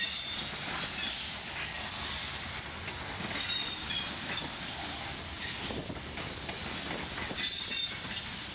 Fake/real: real